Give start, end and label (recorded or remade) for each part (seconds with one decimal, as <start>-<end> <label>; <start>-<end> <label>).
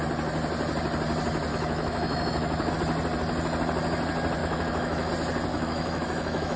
0.0-1.5 recorded; 1.5-2.7 remade; 2.7-4.4 recorded; 4.4-5.1 remade; 5.1-5.5 recorded; 5.5-6.6 remade